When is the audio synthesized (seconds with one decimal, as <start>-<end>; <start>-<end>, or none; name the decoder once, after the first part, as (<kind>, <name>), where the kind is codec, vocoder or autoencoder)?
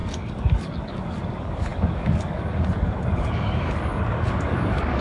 0.0-5.0 (codec, DAC)